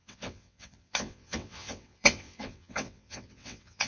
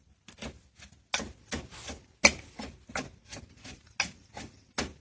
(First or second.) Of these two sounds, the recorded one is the second